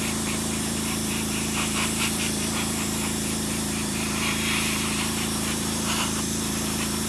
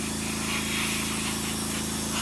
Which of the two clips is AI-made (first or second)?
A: first